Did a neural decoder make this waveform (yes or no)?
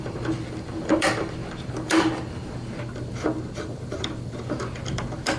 yes